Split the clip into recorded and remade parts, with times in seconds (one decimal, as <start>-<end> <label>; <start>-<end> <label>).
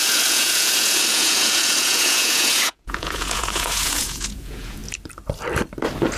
0.0-4.8 remade; 4.8-6.2 recorded